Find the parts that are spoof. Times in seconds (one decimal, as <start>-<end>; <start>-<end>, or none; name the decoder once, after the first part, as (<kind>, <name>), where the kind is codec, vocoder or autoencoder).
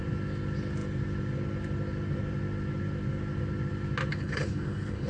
4.1-5.1 (codec, HILCodec)